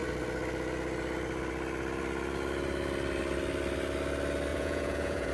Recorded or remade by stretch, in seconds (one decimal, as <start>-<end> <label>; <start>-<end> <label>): 0.0-4.5 recorded; 4.5-5.3 remade